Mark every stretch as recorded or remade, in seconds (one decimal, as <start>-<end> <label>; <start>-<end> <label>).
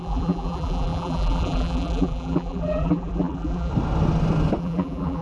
0.0-3.7 remade; 3.7-4.6 recorded; 4.6-5.2 remade